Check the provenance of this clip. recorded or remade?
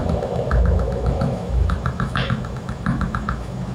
remade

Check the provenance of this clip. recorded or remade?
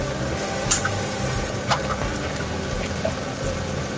remade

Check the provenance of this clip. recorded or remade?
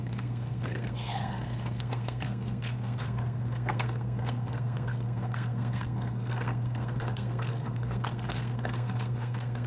remade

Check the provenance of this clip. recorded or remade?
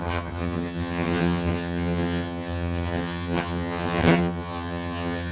remade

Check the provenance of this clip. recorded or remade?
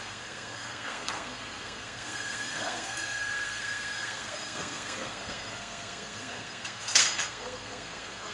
remade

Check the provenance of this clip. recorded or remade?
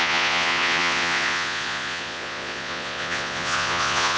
remade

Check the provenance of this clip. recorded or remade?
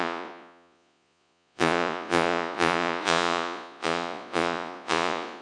remade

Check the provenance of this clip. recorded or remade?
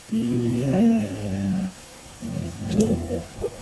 remade